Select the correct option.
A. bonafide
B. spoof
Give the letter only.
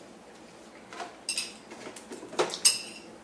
A